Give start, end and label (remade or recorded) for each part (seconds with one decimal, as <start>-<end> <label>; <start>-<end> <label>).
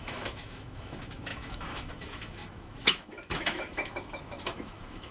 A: 0.0-5.1 remade